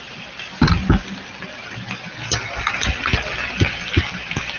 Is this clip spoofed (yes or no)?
no